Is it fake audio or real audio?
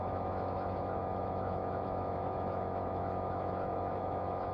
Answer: fake